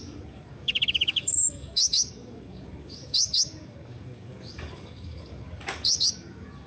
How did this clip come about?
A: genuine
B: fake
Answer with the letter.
B